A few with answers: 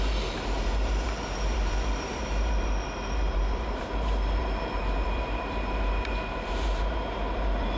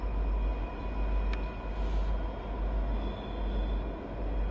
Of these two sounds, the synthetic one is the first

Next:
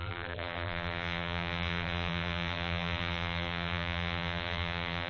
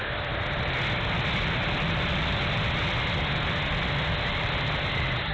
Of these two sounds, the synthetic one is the first